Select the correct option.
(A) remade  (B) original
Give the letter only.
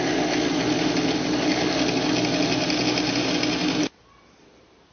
B